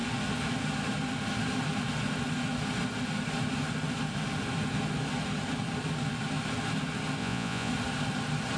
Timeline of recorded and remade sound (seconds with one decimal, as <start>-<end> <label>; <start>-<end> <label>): 0.0-7.2 recorded; 7.2-7.7 remade; 7.7-8.6 recorded